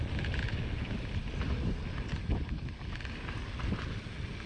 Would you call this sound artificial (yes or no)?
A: no